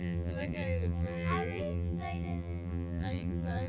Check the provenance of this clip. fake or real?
fake